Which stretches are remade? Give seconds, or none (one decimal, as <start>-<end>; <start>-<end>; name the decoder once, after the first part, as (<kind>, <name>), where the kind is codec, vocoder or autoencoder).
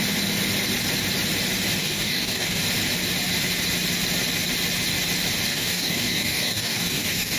1.8-2.6 (codec, DAC); 5.5-7.4